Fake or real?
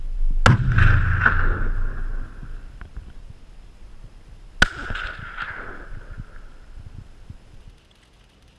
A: real